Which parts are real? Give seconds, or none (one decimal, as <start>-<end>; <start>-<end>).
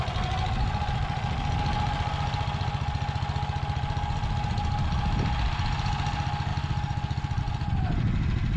0.0-8.6